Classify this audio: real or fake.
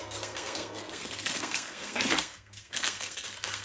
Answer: fake